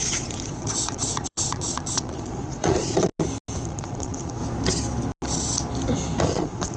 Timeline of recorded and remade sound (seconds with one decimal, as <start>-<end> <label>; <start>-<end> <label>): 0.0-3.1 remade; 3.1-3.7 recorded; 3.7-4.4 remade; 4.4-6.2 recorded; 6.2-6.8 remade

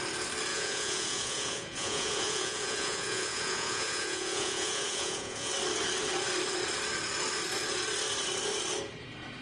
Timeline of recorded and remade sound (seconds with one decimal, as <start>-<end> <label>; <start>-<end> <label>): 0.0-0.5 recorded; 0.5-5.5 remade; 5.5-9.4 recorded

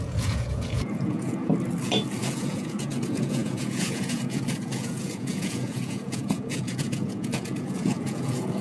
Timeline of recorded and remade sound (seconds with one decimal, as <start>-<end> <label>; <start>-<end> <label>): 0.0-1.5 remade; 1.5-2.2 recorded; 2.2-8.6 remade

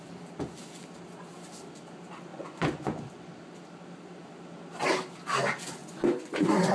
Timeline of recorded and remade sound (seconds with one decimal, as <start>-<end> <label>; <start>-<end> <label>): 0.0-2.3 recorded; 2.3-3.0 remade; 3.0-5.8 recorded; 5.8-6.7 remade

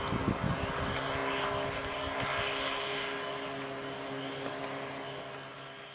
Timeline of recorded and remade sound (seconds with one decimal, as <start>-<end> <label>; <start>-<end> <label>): 0.0-5.9 recorded

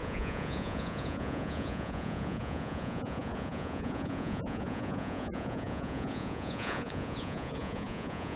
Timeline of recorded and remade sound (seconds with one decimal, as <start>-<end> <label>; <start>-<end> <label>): 0.0-8.4 remade

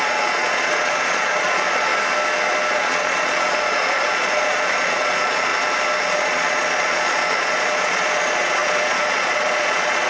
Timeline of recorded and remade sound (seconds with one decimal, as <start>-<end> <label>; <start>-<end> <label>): 0.0-1.9 remade; 1.9-2.7 recorded; 2.7-5.5 remade; 5.5-6.0 recorded; 6.0-10.1 remade

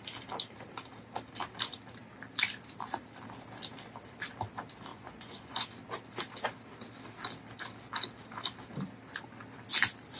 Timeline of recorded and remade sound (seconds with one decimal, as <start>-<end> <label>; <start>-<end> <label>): 0.0-4.9 recorded; 4.9-5.7 remade; 5.7-10.2 recorded